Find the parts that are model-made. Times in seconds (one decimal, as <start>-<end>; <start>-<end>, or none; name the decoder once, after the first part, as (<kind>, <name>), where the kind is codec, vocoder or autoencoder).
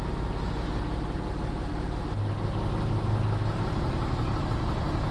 none